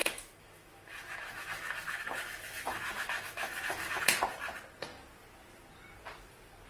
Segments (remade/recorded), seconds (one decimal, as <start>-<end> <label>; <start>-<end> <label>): 0.0-4.0 remade; 4.0-6.7 recorded